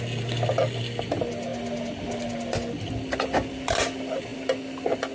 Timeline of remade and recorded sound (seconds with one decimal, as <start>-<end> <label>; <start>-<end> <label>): 0.0-5.1 recorded